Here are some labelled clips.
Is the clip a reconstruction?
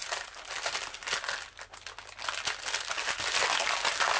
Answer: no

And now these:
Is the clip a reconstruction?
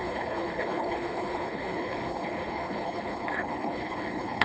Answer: yes